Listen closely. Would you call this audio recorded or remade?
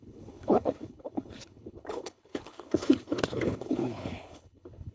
remade